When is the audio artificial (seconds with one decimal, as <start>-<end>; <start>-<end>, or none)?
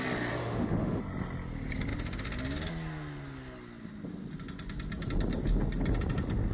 0.4-1.0